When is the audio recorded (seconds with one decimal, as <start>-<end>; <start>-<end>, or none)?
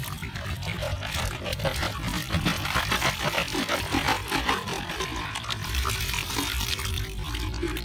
0.0-7.8